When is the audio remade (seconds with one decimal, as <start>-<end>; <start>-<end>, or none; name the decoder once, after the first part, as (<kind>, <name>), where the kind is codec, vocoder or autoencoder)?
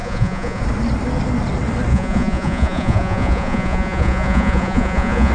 0.0-0.6 (vocoder, Vocos); 1.9-5.3